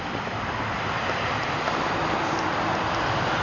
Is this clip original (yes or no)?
no